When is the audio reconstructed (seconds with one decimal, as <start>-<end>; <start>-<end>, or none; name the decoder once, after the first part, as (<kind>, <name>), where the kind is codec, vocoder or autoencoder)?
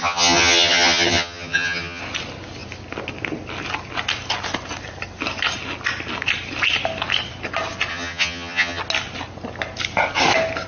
0.0-2.0 (vocoder, HiFi-GAN); 7.9-8.8